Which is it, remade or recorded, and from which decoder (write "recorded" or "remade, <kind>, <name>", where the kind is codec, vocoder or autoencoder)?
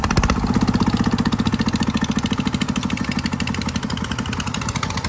recorded